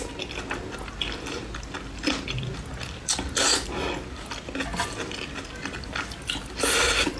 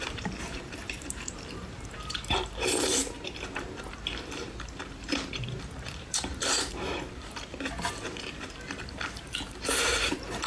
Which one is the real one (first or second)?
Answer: first